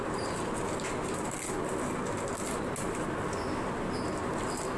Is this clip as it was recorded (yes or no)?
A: yes